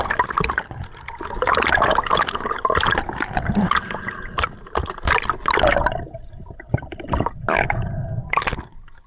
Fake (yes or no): no